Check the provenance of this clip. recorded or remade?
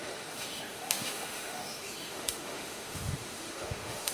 remade